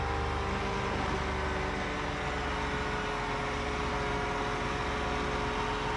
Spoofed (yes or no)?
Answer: no